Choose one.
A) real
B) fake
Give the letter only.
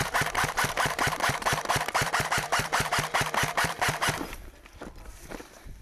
B